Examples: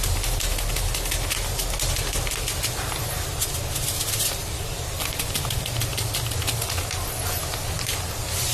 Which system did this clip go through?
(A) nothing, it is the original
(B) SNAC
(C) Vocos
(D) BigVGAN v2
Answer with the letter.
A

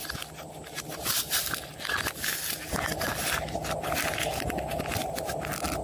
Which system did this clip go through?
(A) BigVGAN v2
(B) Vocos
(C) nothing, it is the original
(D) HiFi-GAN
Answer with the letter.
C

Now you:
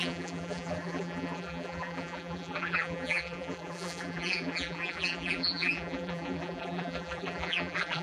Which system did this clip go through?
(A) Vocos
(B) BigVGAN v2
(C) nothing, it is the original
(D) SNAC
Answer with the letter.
B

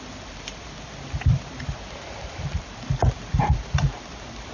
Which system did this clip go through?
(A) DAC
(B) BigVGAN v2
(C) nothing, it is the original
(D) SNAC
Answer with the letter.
B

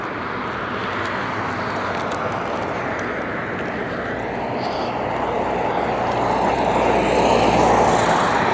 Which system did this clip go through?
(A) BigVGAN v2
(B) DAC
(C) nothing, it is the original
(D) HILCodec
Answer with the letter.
C